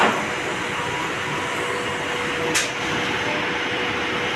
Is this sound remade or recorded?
recorded